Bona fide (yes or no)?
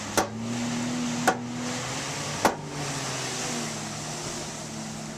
yes